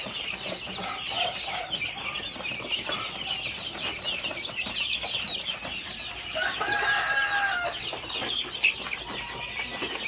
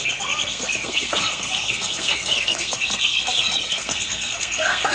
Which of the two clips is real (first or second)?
first